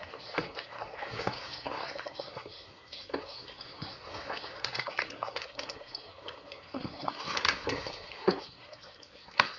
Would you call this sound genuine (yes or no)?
no